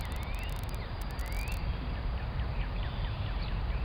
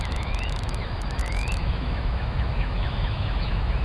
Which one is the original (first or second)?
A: first